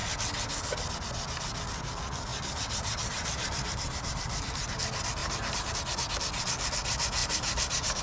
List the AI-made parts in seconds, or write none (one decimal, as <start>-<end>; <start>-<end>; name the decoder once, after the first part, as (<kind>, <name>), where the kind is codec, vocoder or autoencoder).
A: 2.3-4.6 (vocoder, BigVGAN v2); 5.2-5.7; 7.2-8.0